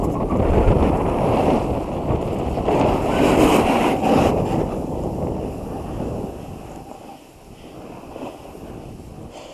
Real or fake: real